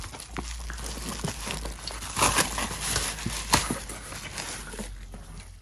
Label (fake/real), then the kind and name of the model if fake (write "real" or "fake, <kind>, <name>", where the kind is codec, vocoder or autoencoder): real